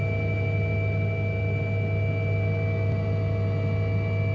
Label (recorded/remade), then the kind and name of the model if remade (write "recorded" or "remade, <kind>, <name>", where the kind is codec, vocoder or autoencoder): recorded